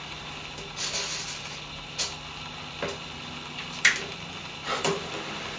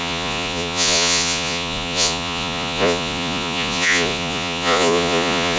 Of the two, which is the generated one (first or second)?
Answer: second